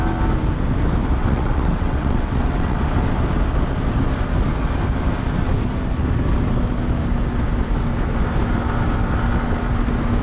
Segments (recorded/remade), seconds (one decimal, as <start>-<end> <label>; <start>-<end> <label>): 0.0-1.2 recorded; 1.2-2.8 remade; 2.8-10.2 recorded